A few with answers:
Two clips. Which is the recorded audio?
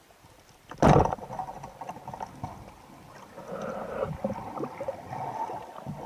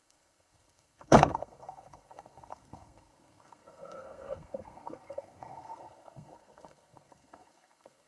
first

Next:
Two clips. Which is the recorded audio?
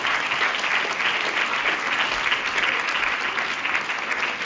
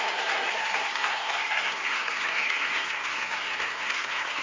first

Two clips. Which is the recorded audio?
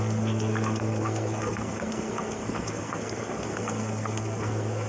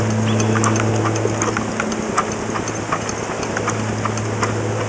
second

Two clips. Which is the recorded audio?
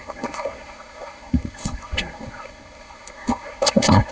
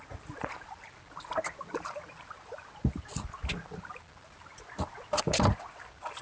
second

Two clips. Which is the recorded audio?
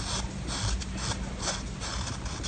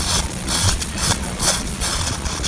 first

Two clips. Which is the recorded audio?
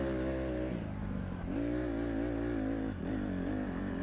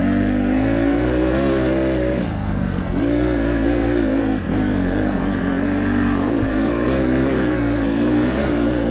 first